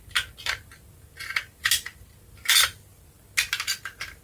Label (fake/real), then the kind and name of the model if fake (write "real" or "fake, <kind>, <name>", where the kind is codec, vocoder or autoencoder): real